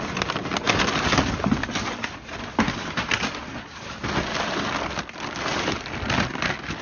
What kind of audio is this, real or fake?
real